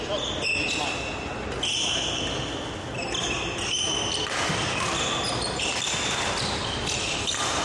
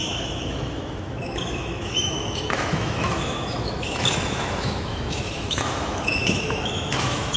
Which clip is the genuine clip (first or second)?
first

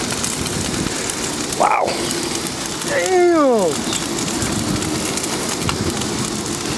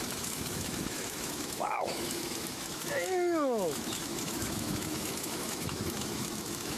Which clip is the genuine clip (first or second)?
first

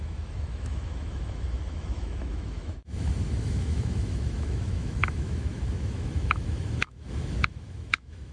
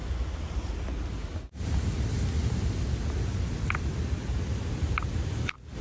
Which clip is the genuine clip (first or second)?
second